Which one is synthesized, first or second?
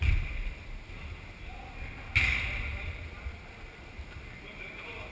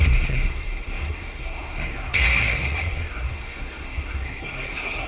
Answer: second